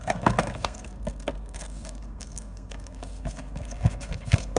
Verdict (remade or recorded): remade